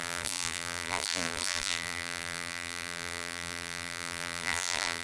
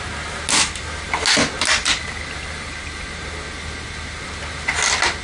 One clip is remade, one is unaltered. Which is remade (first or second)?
first